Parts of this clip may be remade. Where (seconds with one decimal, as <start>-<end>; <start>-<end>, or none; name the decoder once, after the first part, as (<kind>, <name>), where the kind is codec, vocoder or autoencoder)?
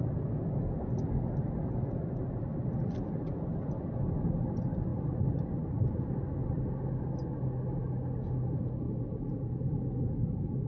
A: 4.9-5.9 (vocoder, BigVGAN v2)